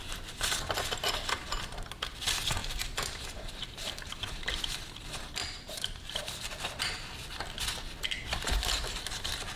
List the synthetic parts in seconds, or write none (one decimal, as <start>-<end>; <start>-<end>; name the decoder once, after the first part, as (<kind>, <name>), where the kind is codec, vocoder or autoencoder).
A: 2.6-3.9 (vocoder, BigVGAN v2); 5.4-6.8

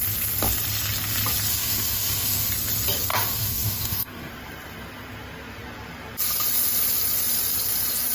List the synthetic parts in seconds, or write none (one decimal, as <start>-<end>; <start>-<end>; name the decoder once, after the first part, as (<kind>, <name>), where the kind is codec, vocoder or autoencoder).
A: 1.5-2.5 (codec, DAC); 3.1-4.3

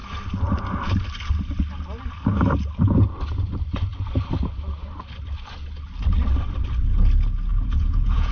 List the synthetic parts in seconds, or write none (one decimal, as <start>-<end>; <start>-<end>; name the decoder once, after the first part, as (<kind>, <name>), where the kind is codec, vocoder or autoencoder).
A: 7.5-8.3 (vocoder, Vocos)

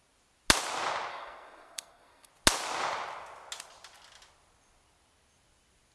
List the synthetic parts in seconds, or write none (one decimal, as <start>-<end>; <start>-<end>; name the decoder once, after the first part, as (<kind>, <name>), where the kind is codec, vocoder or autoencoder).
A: 1.1-2.3 (codec, SNAC)

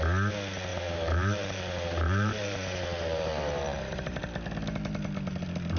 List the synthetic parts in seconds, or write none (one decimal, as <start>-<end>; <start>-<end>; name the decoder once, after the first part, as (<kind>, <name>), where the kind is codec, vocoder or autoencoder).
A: 0.7-4.2 (vocoder, BigVGAN v2)